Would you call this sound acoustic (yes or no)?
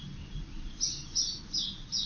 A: yes